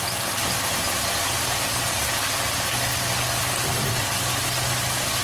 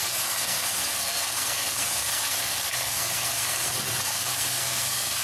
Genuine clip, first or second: first